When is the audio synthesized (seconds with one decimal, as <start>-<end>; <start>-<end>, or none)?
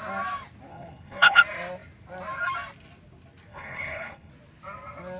0.7-1.4; 3.5-4.3